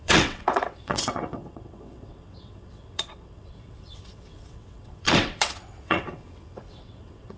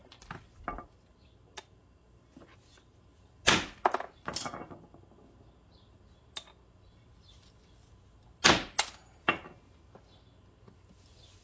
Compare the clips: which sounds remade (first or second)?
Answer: first